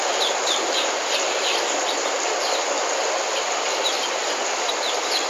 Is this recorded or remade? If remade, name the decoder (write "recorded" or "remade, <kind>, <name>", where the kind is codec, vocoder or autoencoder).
recorded